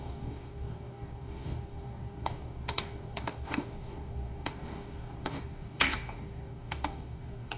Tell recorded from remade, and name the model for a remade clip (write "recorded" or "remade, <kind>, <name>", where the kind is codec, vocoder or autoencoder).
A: remade, codec, DAC